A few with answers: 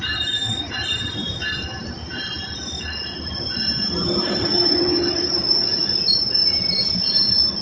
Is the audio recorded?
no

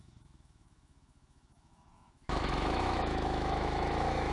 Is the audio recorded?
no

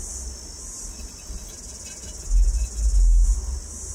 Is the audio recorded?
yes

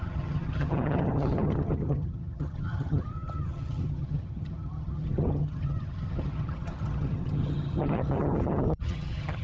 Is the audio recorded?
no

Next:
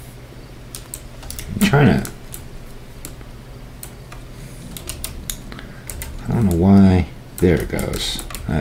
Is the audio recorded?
yes